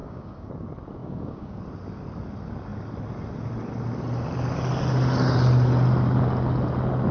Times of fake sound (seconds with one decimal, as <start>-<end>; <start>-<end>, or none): 0.0-0.5; 1.0-1.6

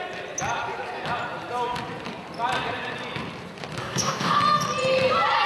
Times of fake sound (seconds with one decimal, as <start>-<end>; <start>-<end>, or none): 3.8-4.4

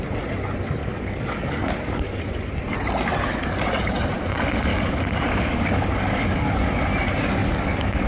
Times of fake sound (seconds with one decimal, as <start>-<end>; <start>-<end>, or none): 0.8-2.2; 4.7-6.8; 7.4-8.1

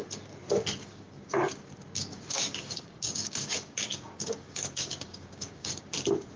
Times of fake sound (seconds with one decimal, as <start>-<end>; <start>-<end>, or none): 0.8-1.7; 2.1-5.9

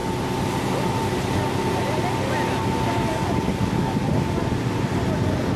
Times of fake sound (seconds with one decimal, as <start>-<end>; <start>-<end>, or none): 3.1-4.0